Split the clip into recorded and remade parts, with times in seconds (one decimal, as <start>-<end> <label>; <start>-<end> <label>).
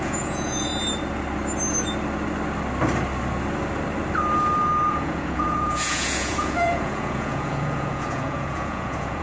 0.0-0.7 remade; 0.7-4.9 recorded; 4.9-9.2 remade